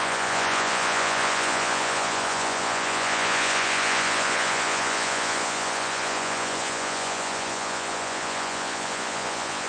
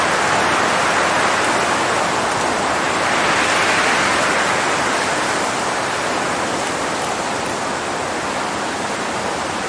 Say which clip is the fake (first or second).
first